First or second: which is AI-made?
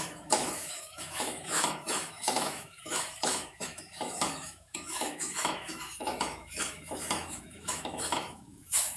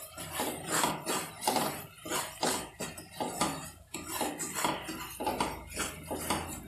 first